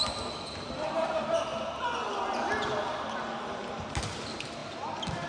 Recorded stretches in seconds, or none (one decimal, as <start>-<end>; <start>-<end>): 0.0-5.3